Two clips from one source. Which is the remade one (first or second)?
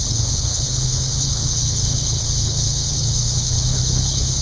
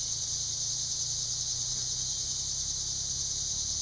first